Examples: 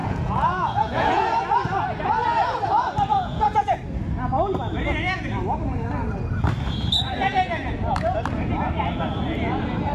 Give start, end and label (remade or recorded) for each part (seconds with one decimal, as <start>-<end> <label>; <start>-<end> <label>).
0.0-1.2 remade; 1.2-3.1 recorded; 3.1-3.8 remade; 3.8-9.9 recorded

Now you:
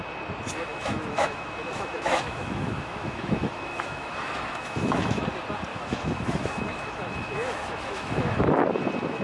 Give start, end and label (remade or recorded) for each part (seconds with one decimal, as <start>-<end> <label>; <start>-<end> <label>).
0.0-0.7 recorded; 0.7-5.2 remade; 5.2-5.7 recorded; 5.7-8.4 remade; 8.4-9.2 recorded

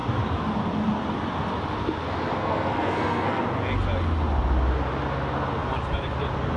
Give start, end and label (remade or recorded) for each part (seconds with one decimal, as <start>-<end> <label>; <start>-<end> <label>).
0.0-2.4 recorded; 2.4-3.4 remade; 3.4-6.6 recorded

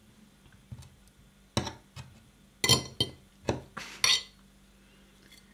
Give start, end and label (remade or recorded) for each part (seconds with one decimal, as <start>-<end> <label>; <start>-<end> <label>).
0.0-5.5 recorded

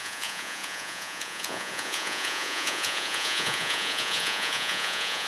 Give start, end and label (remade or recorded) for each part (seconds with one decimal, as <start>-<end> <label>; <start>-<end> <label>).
0.0-5.3 remade